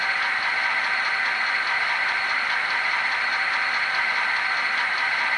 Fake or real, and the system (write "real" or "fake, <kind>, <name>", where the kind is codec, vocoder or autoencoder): real